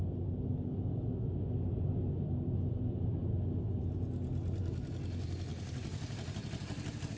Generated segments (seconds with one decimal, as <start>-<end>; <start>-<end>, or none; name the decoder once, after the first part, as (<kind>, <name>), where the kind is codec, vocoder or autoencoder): 5.5-7.2 (vocoder, BigVGAN v2)